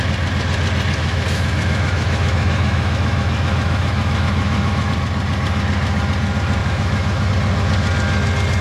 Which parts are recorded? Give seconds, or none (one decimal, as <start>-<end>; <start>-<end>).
0.0-1.0; 4.9-6.6; 7.3-8.6